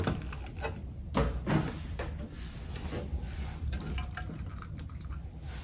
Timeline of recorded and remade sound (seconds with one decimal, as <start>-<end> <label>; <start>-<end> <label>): 0.0-5.6 recorded